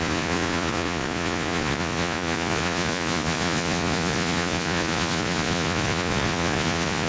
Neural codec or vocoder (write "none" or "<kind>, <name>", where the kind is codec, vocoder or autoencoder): vocoder, Vocos